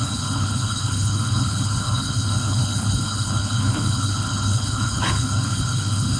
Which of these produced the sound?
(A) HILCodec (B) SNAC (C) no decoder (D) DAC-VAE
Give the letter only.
A